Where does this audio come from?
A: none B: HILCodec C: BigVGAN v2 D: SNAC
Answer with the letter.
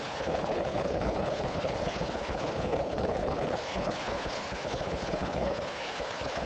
B